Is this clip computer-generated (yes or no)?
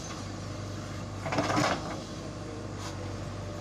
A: no